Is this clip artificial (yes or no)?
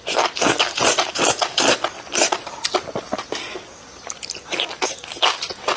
no